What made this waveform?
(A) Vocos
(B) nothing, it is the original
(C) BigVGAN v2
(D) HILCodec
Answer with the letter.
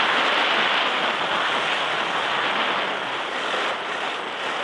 B